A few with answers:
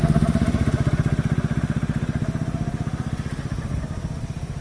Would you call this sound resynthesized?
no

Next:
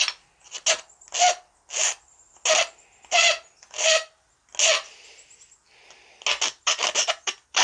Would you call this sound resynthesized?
no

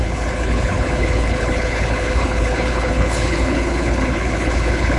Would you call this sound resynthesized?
yes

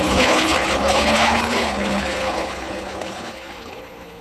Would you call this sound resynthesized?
yes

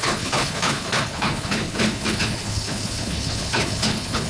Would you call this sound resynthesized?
yes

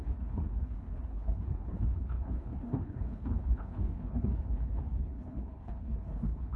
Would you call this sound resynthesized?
yes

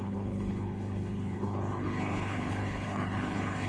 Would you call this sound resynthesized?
yes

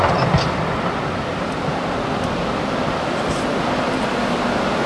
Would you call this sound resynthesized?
no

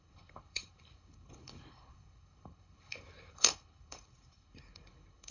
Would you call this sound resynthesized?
yes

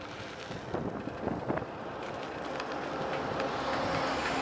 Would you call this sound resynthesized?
no